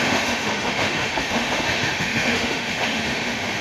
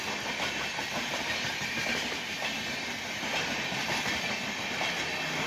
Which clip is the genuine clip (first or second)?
second